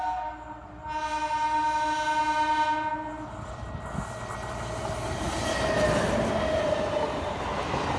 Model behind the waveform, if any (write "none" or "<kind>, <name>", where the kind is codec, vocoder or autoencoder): none